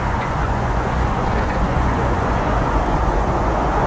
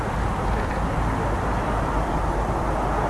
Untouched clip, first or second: second